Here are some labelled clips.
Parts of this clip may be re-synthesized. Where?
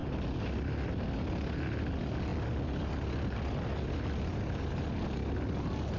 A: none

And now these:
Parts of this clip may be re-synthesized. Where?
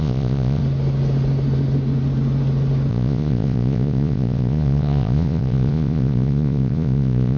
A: 0.0-0.6; 2.9-7.4